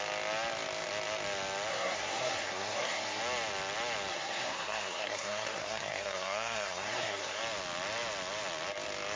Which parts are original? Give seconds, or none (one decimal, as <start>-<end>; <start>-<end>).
0.0-1.7; 3.2-4.1; 7.4-9.2